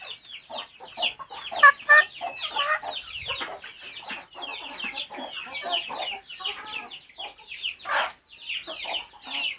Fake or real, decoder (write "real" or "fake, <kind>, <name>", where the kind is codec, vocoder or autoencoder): real